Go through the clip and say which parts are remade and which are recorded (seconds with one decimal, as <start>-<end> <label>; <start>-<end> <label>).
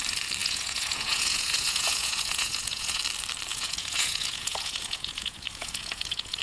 0.0-0.4 recorded; 0.4-3.0 remade; 3.0-3.5 recorded; 3.5-6.4 remade